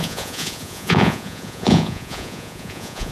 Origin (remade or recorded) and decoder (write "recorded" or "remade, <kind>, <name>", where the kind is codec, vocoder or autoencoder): remade, vocoder, Vocos